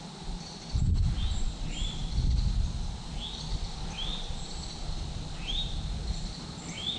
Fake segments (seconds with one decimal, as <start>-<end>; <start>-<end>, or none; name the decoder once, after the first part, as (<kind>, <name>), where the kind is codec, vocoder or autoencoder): 0.0-0.8 (vocoder, BigVGAN v2); 1.4-2.0; 4.1-7.0